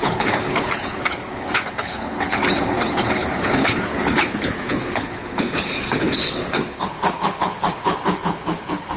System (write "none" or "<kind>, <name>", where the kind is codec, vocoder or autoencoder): codec, HILCodec